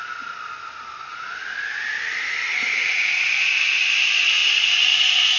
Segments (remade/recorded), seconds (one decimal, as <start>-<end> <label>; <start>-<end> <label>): 0.0-1.1 recorded; 1.1-1.6 remade; 1.6-2.5 recorded; 2.5-3.9 remade; 3.9-4.4 recorded; 4.4-5.4 remade